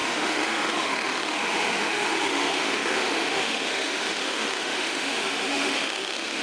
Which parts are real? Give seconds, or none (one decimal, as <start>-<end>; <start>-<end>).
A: none